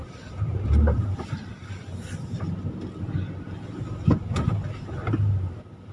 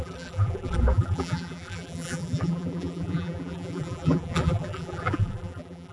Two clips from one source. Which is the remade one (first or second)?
second